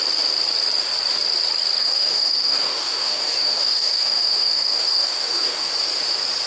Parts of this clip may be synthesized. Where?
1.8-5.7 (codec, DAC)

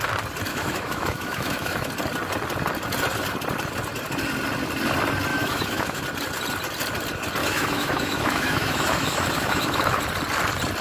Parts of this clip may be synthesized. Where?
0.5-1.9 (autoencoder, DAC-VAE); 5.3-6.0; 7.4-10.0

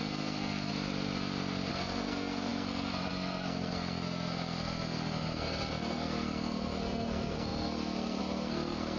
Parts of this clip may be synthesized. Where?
0.0-0.7 (codec, SNAC); 1.7-9.0

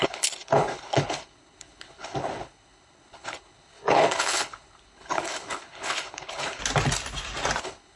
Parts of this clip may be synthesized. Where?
0.0-6.6 (codec, HILCodec); 7.6-8.0